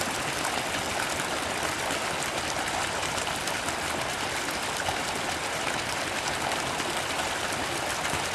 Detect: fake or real real